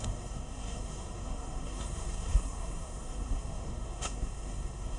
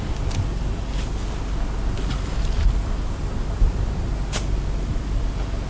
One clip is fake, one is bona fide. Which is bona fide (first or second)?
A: second